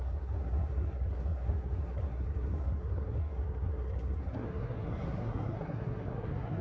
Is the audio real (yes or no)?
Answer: no